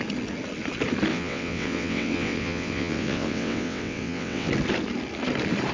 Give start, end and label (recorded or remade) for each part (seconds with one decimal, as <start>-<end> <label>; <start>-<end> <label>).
0.0-1.1 recorded; 1.1-4.5 remade; 4.5-5.7 recorded